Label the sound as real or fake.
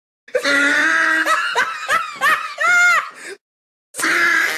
real